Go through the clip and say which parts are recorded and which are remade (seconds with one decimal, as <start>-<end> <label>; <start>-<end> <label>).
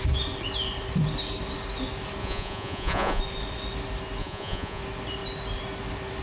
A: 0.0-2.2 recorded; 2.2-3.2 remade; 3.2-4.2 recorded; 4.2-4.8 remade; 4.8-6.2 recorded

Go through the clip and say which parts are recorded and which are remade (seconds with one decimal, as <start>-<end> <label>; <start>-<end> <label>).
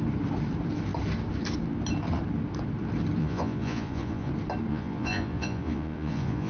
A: 0.0-3.2 recorded; 3.2-4.3 remade; 4.3-4.7 recorded; 4.7-6.5 remade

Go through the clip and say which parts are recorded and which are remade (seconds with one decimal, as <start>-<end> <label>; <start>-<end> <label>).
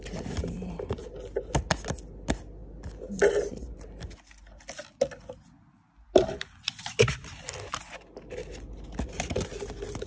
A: 0.0-10.1 recorded